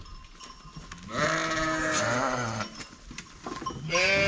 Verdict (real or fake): real